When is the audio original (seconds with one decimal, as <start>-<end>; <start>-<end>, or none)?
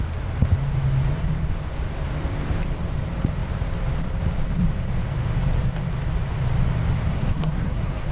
0.0-7.1